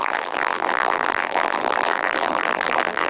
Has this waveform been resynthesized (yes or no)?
yes